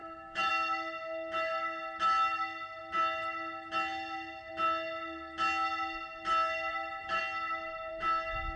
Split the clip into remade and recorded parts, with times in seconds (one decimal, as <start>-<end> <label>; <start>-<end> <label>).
0.0-0.5 remade; 0.5-6.7 recorded; 6.7-7.2 remade; 7.2-8.6 recorded